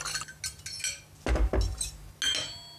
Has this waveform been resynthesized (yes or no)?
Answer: no